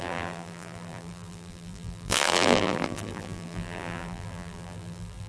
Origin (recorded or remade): remade